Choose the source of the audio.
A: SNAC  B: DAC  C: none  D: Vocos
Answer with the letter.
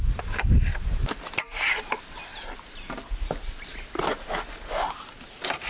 C